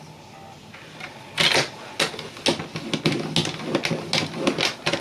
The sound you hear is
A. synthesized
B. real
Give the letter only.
B